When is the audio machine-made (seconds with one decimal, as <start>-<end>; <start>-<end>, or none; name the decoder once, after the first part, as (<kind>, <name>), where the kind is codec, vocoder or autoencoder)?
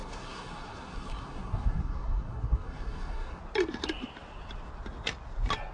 0.0-3.4 (codec, SNAC)